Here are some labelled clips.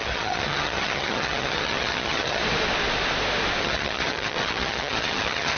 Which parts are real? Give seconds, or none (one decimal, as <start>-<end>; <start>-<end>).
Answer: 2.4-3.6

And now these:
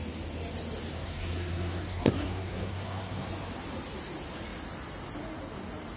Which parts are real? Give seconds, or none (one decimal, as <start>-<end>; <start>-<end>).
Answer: 0.0-0.9; 3.3-6.0

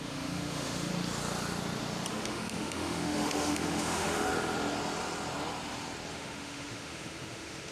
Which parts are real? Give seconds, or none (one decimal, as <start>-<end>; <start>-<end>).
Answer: 0.9-2.1; 4.3-6.1

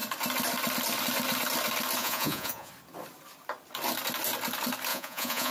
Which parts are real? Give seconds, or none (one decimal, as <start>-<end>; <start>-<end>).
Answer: 0.0-2.0; 2.7-4.9

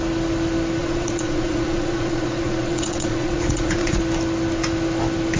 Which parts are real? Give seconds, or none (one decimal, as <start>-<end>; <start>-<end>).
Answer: 0.0-0.8; 4.0-5.4

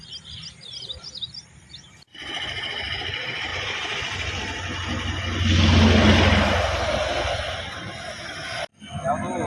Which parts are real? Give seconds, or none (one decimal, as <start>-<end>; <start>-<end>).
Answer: 0.0-3.5; 4.4-9.5

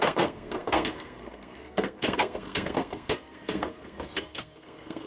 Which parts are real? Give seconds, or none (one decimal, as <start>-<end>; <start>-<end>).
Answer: none